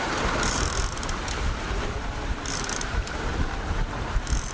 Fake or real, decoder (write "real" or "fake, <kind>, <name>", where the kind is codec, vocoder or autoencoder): fake, vocoder, BigVGAN v2